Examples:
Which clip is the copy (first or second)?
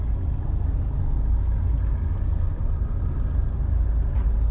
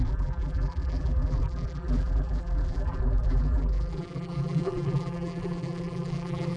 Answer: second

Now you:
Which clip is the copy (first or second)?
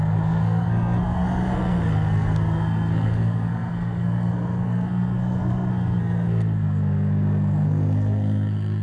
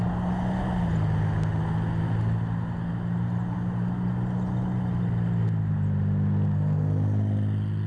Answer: first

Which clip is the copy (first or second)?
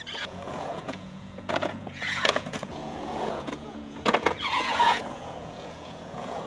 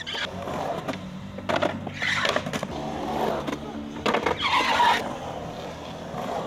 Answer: first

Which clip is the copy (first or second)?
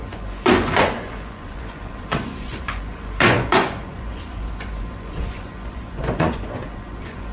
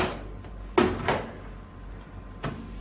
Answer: first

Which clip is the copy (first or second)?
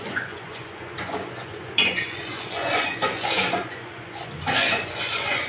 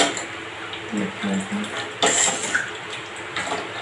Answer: first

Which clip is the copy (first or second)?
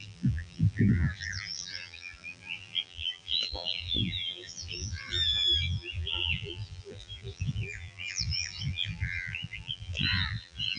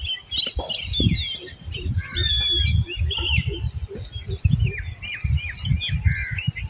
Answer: first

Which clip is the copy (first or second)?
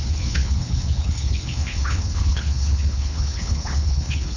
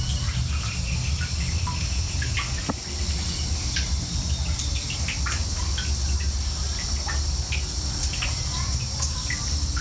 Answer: first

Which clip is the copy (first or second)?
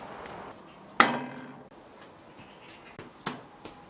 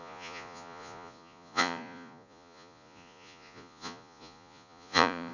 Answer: second